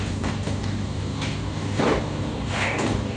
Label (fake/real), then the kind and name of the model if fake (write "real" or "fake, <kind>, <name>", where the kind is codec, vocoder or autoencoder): fake, codec, DAC